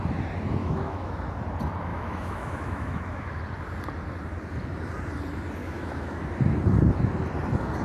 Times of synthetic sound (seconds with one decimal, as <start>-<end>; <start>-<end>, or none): 0.6-1.2; 1.9-3.4; 5.6-6.2